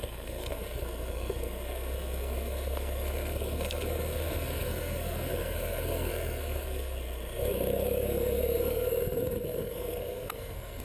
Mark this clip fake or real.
fake